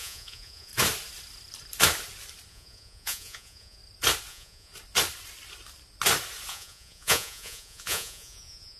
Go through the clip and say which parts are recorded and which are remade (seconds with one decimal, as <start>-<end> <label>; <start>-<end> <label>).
0.0-0.7 remade; 0.7-2.5 recorded; 2.5-3.8 remade; 3.8-4.3 recorded; 4.3-4.7 remade; 4.7-6.5 recorded; 6.5-8.8 remade